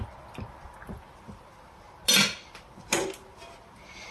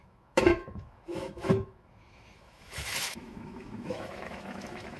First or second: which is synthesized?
second